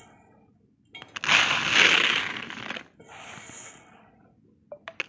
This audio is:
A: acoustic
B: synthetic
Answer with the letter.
A